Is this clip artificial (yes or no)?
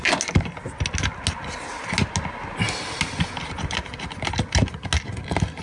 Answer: no